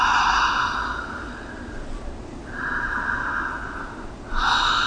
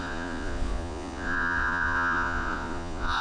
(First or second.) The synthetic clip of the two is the second